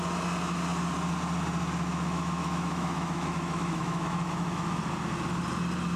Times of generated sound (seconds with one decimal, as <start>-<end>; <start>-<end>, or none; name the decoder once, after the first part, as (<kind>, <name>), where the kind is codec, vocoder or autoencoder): 1.9-4.8 (autoencoder, DAC-VAE)